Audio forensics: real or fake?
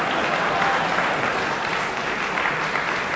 real